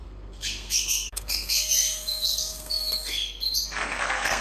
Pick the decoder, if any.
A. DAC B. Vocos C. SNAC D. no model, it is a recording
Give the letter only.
C